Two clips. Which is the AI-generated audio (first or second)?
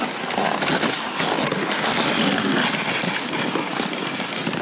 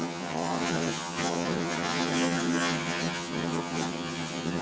second